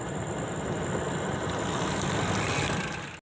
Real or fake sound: real